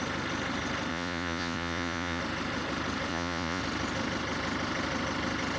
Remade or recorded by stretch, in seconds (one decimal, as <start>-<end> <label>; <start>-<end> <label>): 0.0-0.9 recorded; 0.9-2.2 remade; 2.2-3.1 recorded; 3.1-3.6 remade; 3.6-5.6 recorded